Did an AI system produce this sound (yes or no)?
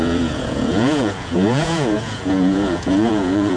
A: yes